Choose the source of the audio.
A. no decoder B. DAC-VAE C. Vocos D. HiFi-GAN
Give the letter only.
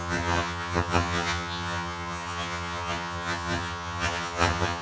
D